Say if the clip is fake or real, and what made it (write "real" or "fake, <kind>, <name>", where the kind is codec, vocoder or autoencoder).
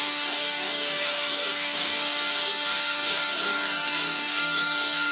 fake, codec, DAC